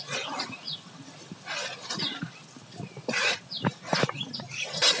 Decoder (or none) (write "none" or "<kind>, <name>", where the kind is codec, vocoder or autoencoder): none